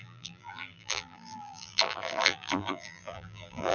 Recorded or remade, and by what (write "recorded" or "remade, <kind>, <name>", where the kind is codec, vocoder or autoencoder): remade, vocoder, BigVGAN v2